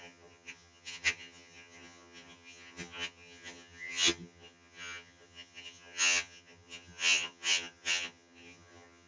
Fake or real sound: fake